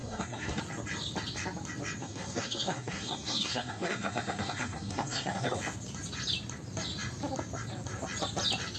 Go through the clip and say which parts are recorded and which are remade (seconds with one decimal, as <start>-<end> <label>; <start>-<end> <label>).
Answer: 0.0-0.6 remade; 0.6-2.0 recorded; 2.0-5.6 remade; 5.6-8.8 recorded